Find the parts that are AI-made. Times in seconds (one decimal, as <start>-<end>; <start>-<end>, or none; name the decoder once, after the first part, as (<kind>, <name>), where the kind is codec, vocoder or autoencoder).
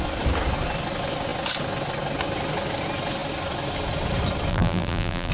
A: 4.5-5.3 (vocoder, BigVGAN v2)